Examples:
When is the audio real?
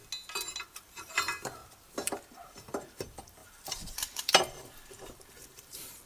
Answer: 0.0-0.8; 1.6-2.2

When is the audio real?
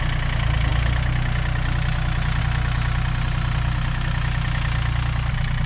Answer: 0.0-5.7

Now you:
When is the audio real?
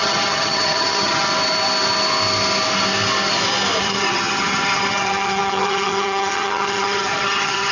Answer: 1.3-3.8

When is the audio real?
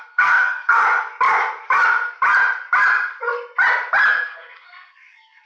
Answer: 0.8-4.1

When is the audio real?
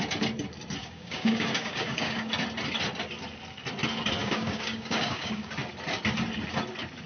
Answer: 0.0-0.8; 2.3-4.2; 5.5-7.1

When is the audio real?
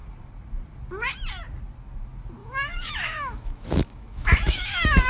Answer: 0.0-2.4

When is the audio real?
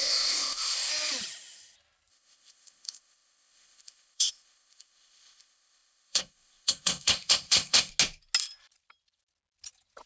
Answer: 0.9-2.1; 7.9-10.1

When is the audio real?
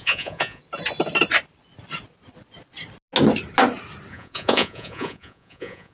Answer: 0.6-4.1